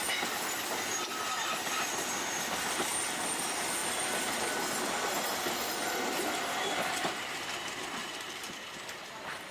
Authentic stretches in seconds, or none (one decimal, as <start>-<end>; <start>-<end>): 0.0-1.1; 1.9-8.0; 8.5-9.5